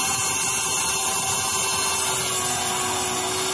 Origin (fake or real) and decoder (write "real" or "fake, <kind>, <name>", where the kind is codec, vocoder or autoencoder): real